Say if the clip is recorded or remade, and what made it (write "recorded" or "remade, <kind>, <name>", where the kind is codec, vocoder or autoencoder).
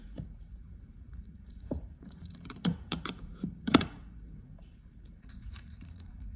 remade, vocoder, Vocos